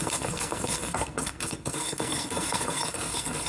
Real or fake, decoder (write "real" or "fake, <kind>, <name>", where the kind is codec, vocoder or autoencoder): fake, codec, SNAC